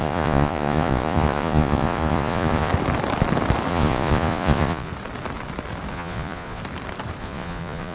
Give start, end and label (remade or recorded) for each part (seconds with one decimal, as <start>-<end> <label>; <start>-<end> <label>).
0.0-2.7 remade; 2.7-3.7 recorded; 3.7-4.9 remade; 4.9-5.9 recorded; 5.9-6.6 remade; 6.6-7.2 recorded; 7.2-7.9 remade

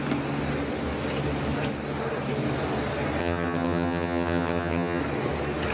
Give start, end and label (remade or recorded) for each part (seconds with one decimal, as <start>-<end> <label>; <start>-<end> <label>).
0.0-3.2 recorded; 3.2-5.0 remade; 5.0-5.7 recorded

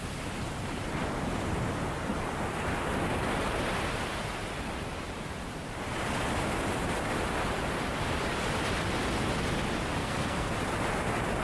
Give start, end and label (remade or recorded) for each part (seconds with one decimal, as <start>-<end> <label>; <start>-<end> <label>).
0.0-10.0 recorded; 10.0-10.5 remade; 10.5-11.4 recorded

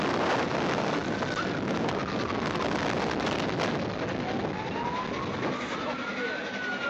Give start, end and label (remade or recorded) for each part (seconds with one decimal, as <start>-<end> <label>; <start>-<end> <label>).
0.0-6.9 recorded

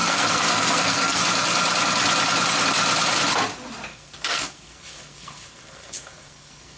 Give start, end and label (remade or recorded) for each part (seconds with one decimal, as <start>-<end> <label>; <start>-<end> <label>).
0.0-1.2 remade; 1.2-3.9 recorded; 3.9-6.8 remade